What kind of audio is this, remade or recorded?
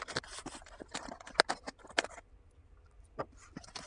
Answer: recorded